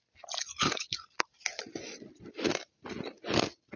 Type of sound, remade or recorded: recorded